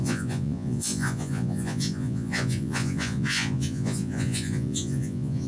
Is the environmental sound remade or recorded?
remade